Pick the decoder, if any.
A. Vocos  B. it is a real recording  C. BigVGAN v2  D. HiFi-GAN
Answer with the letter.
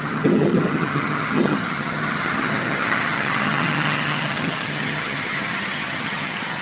D